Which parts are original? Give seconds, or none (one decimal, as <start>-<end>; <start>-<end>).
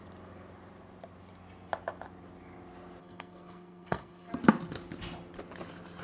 0.0-3.0; 4.3-6.0